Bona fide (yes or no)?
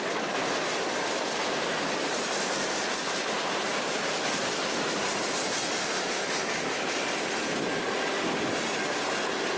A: yes